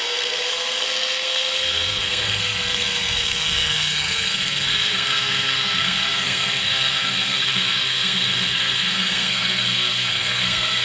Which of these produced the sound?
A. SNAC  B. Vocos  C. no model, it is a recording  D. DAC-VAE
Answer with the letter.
A